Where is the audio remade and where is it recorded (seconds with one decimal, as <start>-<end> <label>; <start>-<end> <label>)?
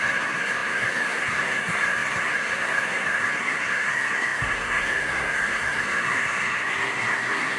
0.0-7.6 remade